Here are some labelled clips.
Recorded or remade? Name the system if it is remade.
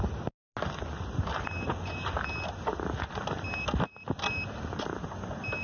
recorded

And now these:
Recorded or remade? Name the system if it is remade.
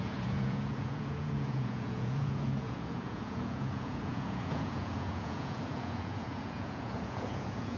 remade, vocoder, Vocos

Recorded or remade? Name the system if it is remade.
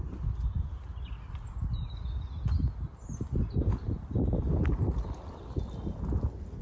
recorded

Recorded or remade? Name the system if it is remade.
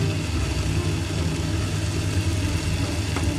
recorded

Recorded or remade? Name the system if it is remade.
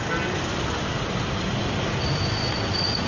recorded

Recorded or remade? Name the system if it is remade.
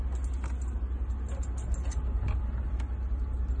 recorded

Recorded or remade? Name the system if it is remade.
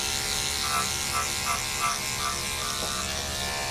recorded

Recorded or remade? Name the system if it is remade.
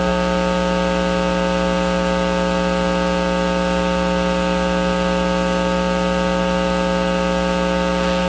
recorded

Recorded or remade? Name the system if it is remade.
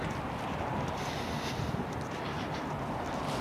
recorded